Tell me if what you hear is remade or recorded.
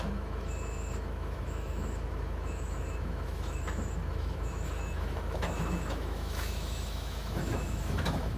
remade